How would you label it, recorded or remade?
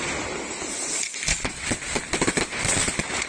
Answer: recorded